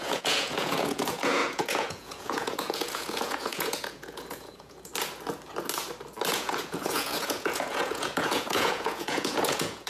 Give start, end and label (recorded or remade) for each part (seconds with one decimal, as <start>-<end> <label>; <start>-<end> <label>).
0.0-4.9 remade; 4.9-6.3 recorded; 6.3-9.9 remade